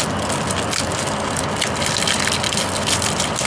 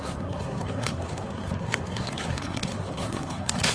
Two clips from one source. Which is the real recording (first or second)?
first